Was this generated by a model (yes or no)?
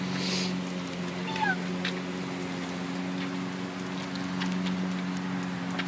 no